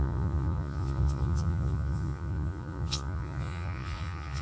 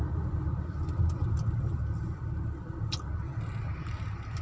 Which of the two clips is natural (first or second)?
second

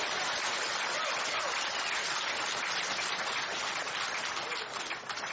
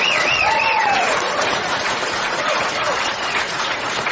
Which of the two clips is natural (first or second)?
first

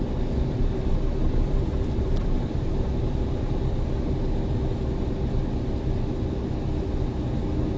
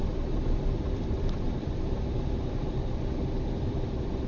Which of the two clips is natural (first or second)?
first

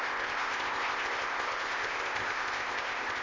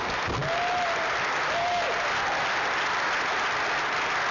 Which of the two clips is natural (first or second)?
second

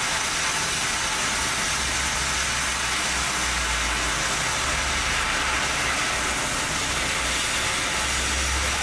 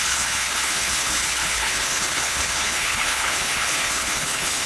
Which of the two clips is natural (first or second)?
first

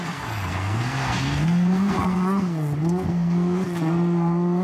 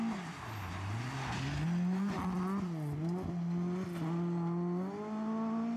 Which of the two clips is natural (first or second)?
second